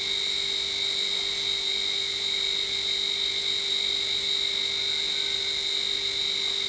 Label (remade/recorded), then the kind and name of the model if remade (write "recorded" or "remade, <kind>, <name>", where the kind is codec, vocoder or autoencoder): recorded